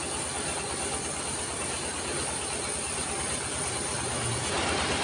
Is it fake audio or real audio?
real